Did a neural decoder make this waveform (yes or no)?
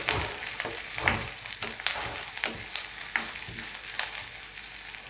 no